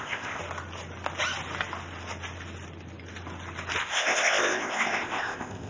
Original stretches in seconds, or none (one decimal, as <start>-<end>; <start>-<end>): 0.4-3.8